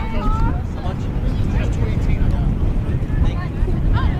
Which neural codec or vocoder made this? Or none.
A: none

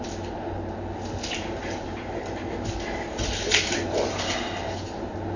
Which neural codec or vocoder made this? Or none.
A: none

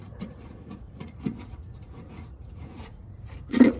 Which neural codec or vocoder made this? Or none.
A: vocoder, Vocos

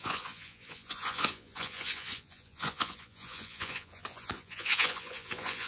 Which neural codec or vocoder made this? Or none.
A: vocoder, Vocos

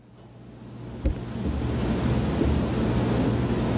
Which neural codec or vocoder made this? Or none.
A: none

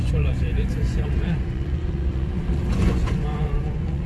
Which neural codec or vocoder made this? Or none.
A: vocoder, Vocos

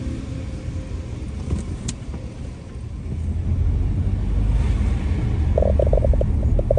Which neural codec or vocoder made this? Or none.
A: none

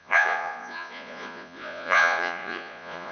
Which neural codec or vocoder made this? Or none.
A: vocoder, Vocos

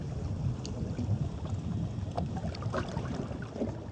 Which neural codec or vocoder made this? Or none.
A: none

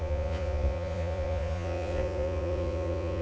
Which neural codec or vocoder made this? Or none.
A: vocoder, Vocos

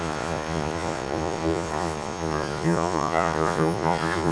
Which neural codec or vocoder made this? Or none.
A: vocoder, Vocos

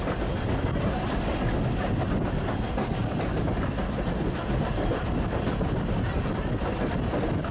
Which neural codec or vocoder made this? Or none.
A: none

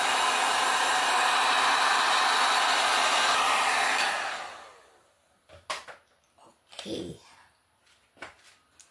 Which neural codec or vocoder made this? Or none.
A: none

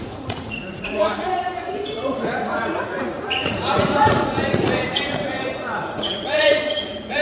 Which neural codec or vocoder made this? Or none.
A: vocoder, Vocos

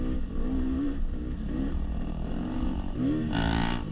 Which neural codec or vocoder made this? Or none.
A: none